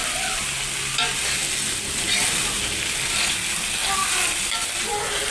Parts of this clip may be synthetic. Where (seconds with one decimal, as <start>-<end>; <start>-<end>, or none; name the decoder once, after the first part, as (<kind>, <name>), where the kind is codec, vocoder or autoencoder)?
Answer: none

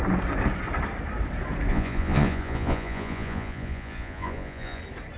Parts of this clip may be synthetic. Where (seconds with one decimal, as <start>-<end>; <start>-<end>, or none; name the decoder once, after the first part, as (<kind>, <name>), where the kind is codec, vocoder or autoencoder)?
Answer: 1.7-4.8 (vocoder, Vocos)